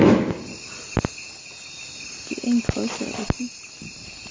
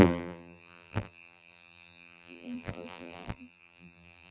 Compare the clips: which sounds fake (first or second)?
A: second